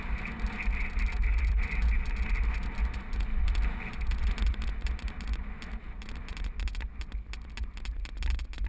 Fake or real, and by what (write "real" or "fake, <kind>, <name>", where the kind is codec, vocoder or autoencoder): real